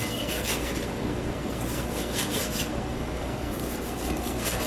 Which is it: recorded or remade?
remade